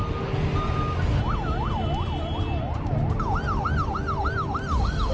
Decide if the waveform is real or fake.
real